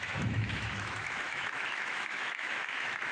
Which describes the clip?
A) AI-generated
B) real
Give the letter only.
A